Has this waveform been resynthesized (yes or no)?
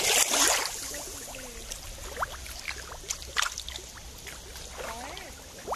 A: no